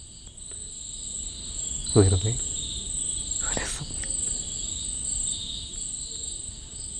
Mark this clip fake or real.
real